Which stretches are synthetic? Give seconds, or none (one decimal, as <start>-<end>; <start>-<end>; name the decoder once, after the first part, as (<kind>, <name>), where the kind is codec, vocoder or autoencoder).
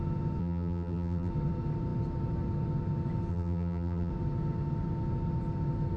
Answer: 0.4-1.3 (vocoder, BigVGAN v2); 3.3-4.1